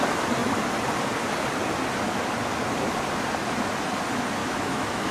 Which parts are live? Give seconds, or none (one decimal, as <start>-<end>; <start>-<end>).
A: 0.0-4.4